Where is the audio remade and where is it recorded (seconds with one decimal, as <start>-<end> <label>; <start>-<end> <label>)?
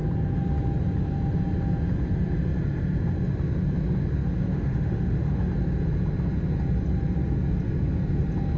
0.0-4.2 recorded; 4.2-5.5 remade; 5.5-8.6 recorded